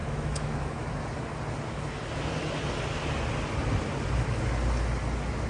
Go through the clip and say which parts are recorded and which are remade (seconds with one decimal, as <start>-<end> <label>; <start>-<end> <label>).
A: 0.0-0.9 remade; 0.9-5.5 recorded